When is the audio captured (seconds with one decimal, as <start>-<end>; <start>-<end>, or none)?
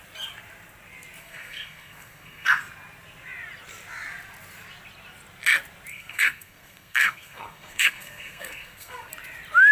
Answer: 0.0-1.2; 2.6-5.9; 9.1-9.7